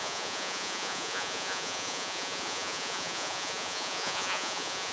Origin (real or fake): fake